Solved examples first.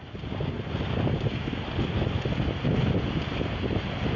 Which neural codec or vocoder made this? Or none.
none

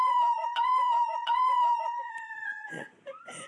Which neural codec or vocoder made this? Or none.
vocoder, Vocos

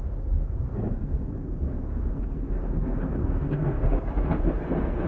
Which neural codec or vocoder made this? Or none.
codec, SNAC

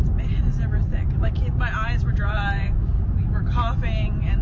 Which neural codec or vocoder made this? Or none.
none